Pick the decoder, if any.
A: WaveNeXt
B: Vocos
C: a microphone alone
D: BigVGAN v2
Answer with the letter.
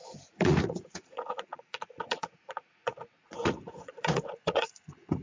B